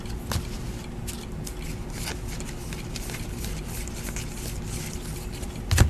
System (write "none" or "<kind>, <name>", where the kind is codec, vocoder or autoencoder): none